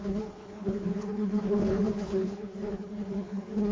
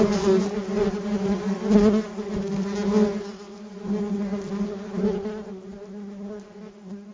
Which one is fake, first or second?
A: first